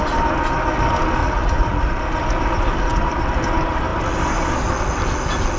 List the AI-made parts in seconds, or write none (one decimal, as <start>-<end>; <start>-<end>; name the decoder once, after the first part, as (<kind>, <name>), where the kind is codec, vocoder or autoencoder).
1.2-1.9 (vocoder, Vocos)